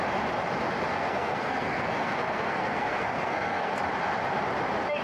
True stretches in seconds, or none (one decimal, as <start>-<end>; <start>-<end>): 0.0-0.9; 3.8-5.0